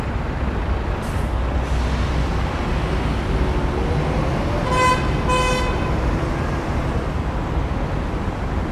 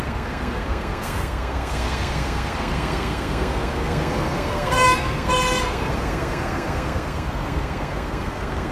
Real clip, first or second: first